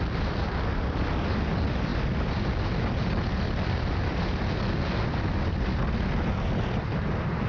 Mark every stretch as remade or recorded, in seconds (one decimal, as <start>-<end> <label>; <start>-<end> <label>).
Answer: 0.0-7.5 recorded